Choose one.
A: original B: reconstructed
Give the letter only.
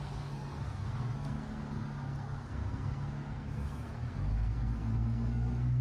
B